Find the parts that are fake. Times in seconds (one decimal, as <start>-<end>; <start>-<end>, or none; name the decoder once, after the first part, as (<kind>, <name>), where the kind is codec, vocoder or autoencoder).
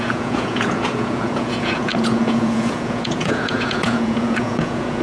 0.0-5.0 (vocoder, Vocos)